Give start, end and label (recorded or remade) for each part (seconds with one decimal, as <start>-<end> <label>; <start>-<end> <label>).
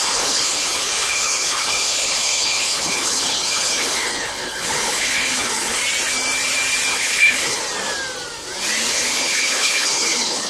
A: 0.0-5.8 remade; 5.8-6.9 recorded; 6.9-7.6 remade; 7.6-8.9 recorded; 8.9-10.5 remade